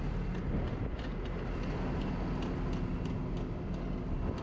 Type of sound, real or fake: real